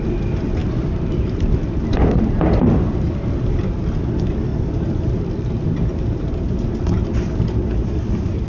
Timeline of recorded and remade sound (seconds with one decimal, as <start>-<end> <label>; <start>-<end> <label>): 0.0-0.6 recorded; 0.6-3.4 remade; 3.4-4.5 recorded; 4.5-8.5 remade